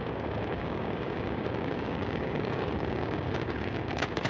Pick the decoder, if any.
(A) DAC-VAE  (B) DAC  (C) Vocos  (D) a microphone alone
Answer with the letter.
B